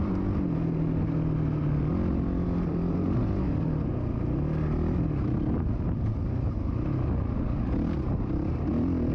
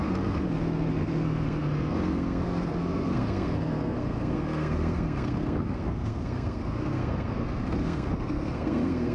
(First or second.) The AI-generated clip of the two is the second